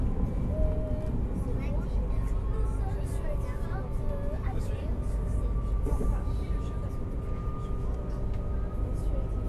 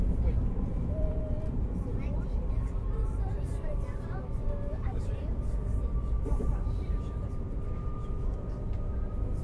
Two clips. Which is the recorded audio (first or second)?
first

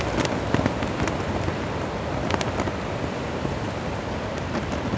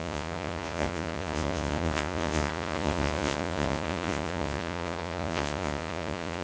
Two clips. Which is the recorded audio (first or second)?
first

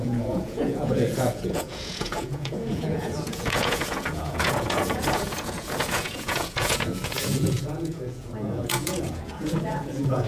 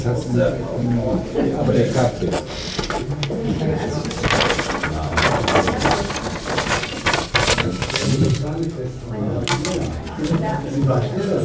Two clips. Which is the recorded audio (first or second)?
second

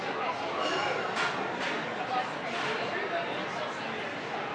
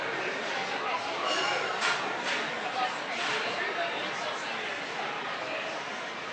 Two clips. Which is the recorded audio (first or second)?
first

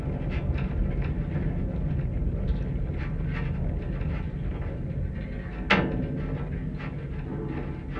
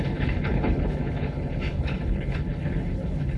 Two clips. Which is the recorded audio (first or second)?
first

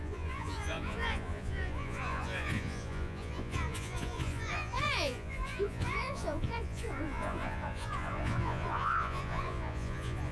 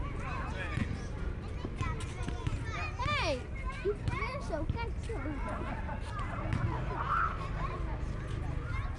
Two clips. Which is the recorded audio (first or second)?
second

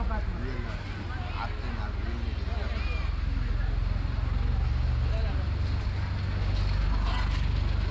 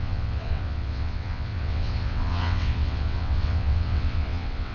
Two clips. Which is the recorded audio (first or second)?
first